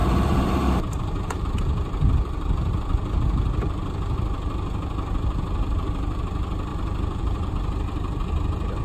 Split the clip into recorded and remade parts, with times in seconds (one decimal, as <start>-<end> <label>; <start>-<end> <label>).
0.0-1.4 remade; 1.4-6.7 recorded; 6.7-7.5 remade; 7.5-8.8 recorded